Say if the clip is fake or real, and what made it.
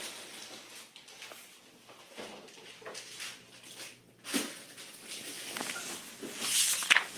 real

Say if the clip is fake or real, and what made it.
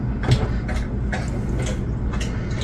real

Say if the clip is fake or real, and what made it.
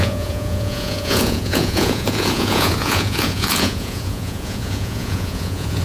fake, vocoder, Vocos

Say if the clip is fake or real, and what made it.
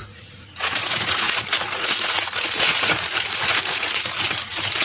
fake, vocoder, Vocos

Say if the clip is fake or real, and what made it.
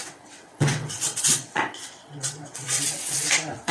fake, vocoder, WaveNeXt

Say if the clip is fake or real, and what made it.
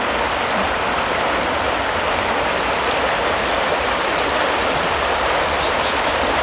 real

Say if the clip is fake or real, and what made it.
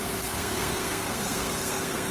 fake, codec, SNAC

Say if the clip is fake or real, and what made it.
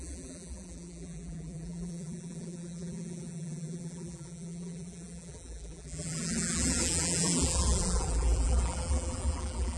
fake, vocoder, BigVGAN v2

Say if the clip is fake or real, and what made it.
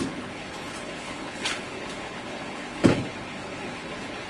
fake, codec, HILCodec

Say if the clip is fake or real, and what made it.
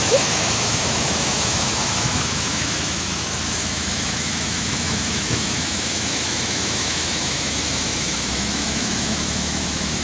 fake, autoencoder, DAC-VAE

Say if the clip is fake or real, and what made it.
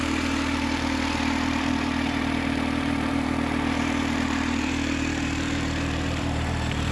fake, vocoder, BigVGAN v2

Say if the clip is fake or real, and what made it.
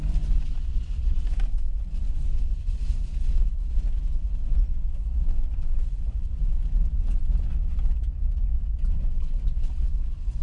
real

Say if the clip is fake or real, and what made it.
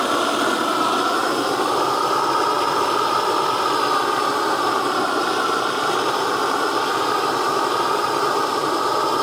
real